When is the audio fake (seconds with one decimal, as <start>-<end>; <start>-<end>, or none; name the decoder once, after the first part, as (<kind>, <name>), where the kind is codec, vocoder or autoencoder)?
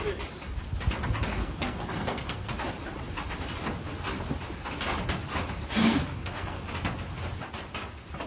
1.3-2.5 (codec, SNAC); 5.8-6.6